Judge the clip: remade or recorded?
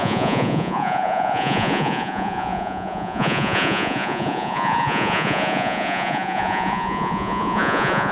remade